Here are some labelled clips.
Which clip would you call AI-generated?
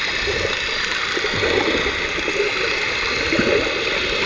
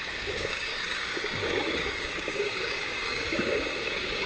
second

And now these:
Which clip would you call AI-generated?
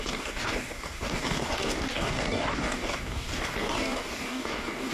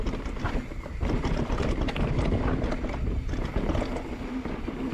first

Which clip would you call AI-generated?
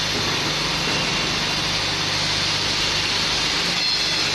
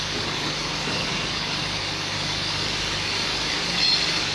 second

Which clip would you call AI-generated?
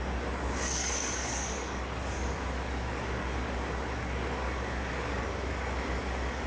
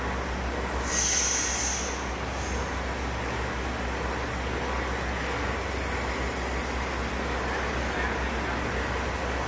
first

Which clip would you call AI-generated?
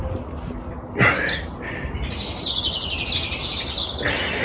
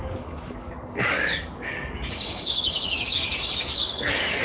second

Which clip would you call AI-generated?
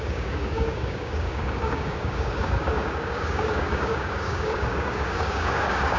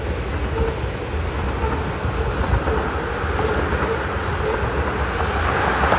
first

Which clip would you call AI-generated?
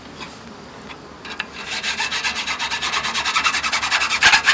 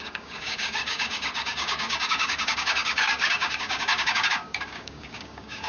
second